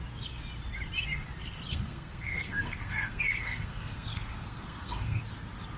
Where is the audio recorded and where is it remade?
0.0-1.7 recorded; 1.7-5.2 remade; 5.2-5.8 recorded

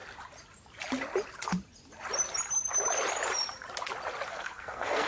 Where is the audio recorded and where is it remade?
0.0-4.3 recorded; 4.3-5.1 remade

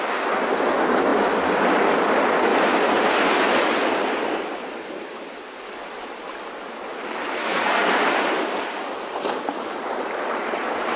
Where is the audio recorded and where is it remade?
0.0-7.4 recorded; 7.4-8.0 remade; 8.0-11.0 recorded

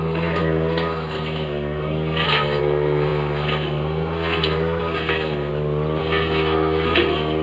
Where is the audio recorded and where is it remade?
0.0-5.5 remade; 5.5-6.0 recorded; 6.0-7.4 remade

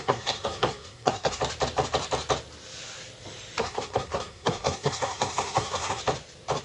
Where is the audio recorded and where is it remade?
0.0-1.4 remade; 1.4-3.6 recorded; 3.6-6.0 remade; 6.0-6.6 recorded